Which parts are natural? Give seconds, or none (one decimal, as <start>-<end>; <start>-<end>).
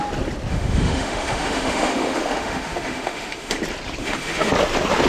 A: 0.0-0.5; 3.6-4.0; 4.5-5.1